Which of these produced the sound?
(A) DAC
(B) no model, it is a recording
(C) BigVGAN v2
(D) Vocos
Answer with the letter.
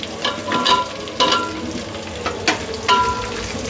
B